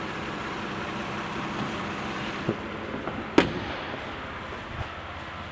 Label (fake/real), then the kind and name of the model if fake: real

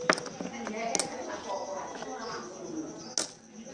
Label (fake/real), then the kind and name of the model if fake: real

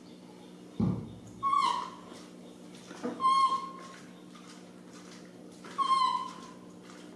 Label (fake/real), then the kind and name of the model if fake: real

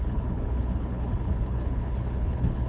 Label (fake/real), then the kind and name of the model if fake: fake, codec, HILCodec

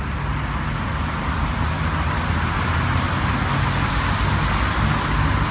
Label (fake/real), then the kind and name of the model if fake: real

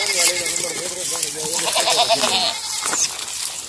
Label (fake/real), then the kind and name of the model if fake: real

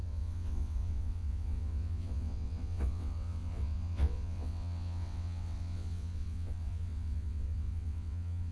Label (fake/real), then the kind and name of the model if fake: fake, vocoder, WaveNeXt